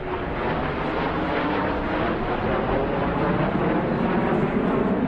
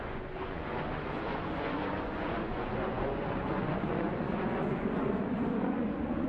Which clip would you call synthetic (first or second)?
second